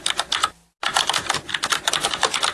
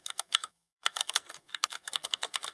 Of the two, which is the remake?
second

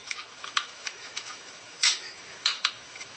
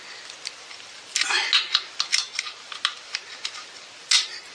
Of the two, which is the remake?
first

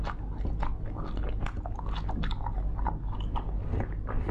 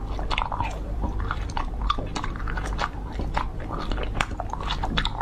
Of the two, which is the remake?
second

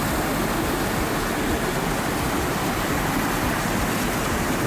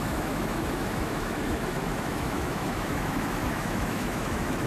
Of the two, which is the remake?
second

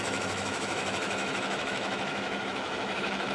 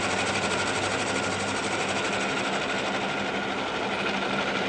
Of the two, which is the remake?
first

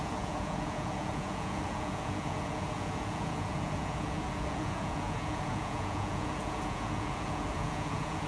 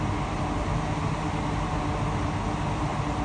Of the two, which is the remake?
first